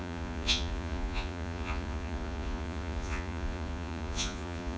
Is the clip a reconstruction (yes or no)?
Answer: yes